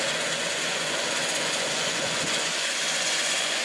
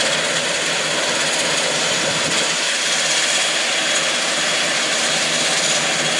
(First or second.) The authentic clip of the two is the second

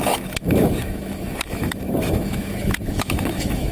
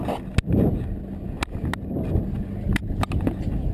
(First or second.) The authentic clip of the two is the second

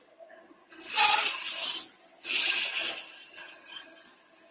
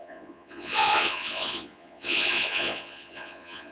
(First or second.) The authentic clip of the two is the first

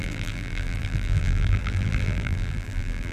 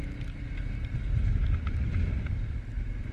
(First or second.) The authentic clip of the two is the second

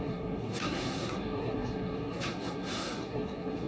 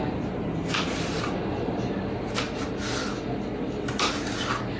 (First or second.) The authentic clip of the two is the second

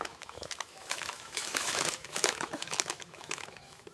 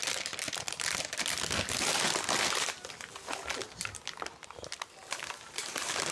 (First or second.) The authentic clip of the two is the second